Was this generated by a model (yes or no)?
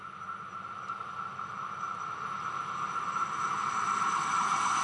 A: no